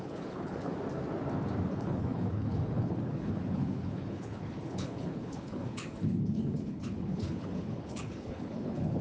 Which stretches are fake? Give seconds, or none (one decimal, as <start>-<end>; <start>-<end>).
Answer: 0.0-0.7; 1.7-9.0